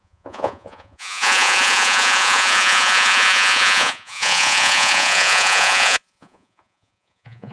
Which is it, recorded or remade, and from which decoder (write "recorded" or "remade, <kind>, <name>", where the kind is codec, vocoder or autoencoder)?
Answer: remade, vocoder, Vocos